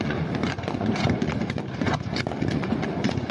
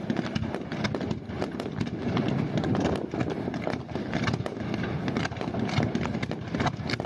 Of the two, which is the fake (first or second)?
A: first